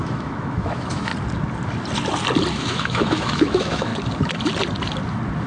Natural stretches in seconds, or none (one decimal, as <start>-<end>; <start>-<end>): 1.1-2.5; 3.9-5.5